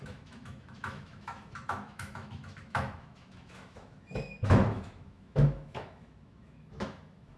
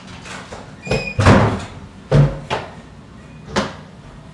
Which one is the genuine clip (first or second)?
second